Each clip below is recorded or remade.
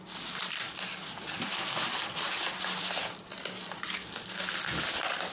recorded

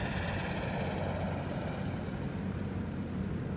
recorded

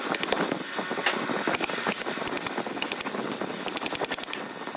recorded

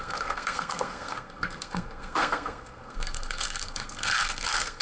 remade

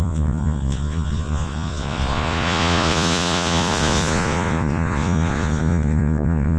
remade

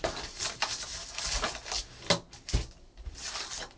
recorded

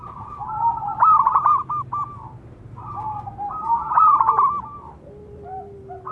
recorded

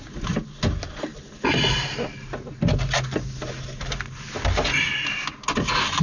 recorded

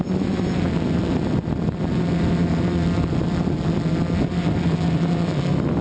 recorded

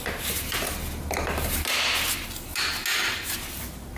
recorded